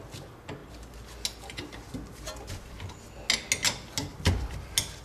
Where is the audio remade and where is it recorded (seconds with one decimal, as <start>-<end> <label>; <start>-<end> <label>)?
0.0-5.0 recorded